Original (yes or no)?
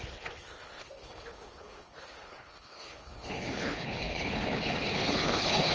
no